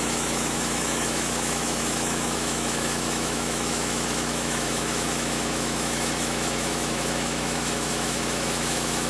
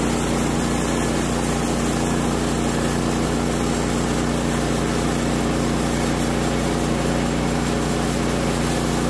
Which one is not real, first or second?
first